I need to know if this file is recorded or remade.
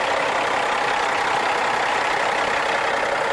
recorded